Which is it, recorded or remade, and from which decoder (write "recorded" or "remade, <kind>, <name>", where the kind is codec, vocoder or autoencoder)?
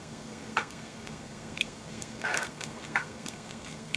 remade, codec, SNAC